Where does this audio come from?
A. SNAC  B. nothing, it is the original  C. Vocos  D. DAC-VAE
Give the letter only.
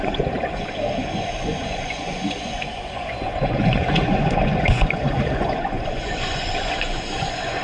C